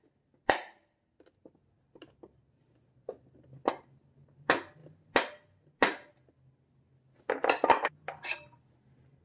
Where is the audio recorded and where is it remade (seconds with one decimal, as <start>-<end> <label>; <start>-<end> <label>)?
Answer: 0.0-9.2 recorded